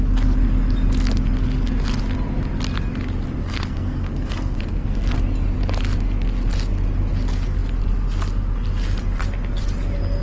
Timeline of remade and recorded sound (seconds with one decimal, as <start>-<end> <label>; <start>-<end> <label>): 0.0-3.4 recorded; 3.4-5.2 remade; 5.2-10.2 recorded